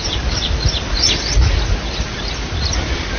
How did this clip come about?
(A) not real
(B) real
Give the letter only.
B